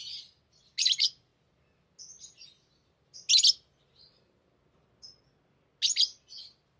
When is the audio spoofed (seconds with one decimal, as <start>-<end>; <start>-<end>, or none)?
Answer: none